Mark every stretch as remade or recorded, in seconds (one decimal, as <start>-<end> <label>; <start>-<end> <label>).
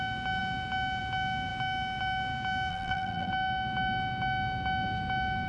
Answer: 0.0-2.7 recorded; 2.7-3.3 remade; 3.3-5.5 recorded